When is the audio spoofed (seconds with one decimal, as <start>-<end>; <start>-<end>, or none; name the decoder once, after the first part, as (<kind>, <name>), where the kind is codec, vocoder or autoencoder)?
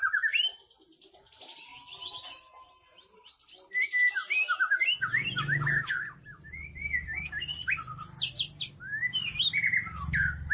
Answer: 1.7-3.3 (vocoder, BigVGAN v2)